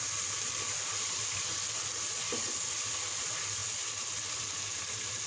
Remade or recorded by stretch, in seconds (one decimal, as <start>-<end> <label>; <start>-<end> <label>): 0.0-5.3 recorded